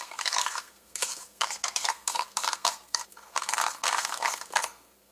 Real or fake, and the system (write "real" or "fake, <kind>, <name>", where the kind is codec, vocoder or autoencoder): fake, codec, SNAC